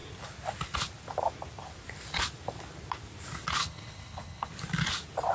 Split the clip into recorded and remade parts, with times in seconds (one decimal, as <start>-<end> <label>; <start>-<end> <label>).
0.0-3.6 recorded; 3.6-4.5 remade; 4.5-5.3 recorded